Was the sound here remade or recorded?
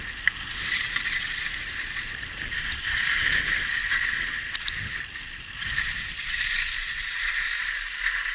recorded